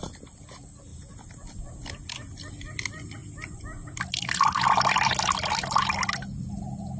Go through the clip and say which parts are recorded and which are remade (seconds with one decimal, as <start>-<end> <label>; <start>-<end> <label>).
0.0-7.0 recorded